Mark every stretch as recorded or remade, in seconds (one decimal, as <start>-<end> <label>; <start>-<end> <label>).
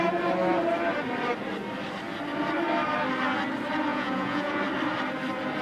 0.0-3.9 recorded; 3.9-4.6 remade; 4.6-5.6 recorded